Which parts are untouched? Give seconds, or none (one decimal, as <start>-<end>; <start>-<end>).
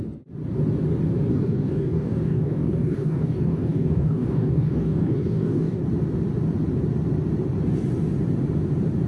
0.0-1.3; 5.8-9.1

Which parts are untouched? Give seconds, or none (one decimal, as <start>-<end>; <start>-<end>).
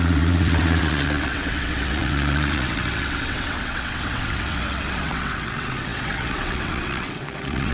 none